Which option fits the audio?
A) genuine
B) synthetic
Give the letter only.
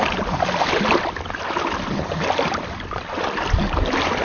A